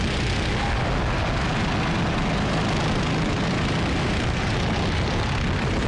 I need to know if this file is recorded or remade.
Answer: recorded